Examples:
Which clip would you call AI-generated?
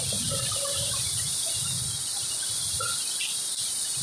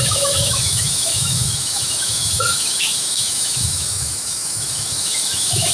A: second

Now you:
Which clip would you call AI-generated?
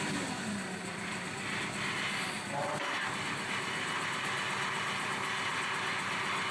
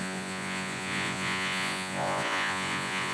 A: second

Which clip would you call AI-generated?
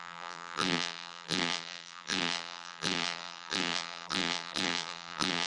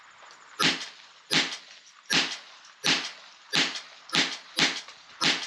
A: first